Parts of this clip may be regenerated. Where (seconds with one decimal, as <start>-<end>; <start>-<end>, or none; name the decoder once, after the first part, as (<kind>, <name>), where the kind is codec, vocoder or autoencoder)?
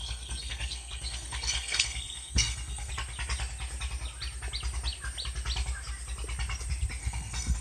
0.0-2.9 (codec, SNAC); 7.0-7.6